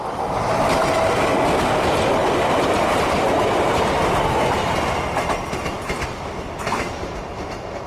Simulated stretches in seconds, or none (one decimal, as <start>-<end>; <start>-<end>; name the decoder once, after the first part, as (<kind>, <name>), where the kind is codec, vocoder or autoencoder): none